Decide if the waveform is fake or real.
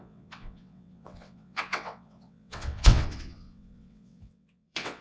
fake